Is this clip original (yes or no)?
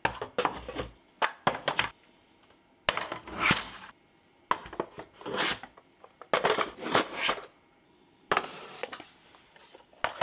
yes